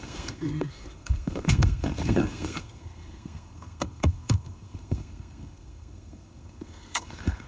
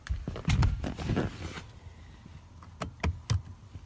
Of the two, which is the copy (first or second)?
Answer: first